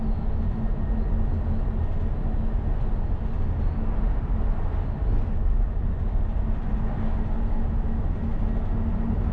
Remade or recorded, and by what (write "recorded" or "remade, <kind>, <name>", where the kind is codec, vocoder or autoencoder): recorded